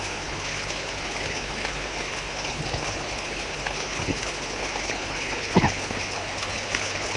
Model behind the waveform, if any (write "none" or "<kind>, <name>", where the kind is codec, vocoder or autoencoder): codec, HILCodec